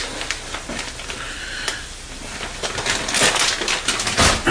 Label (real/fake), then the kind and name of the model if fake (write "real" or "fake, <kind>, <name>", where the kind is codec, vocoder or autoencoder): real